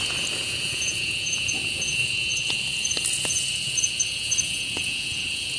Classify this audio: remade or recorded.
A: remade